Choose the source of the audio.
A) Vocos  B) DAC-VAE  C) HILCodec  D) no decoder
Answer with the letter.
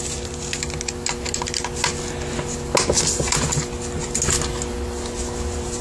D